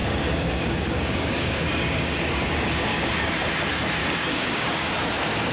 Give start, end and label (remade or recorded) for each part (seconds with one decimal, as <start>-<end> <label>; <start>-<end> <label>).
0.0-3.3 remade; 3.3-4.0 recorded; 4.0-4.9 remade; 4.9-5.5 recorded